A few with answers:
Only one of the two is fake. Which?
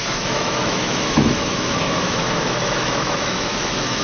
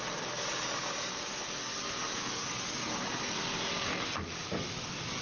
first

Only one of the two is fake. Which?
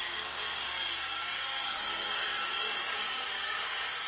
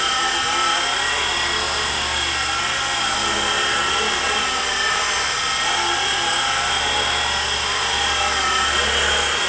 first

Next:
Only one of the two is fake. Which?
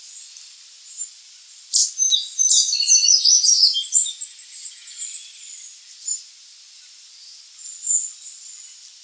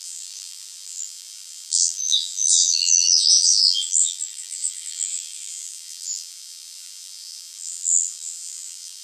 second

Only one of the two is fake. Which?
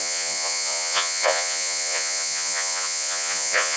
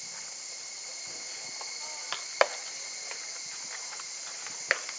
first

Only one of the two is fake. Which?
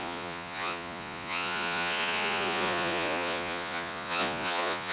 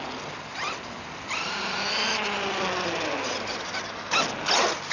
first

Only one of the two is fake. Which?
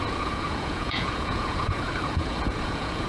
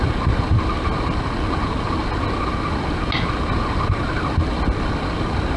first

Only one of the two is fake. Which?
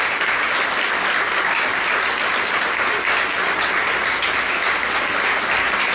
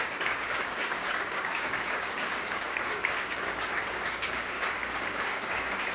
second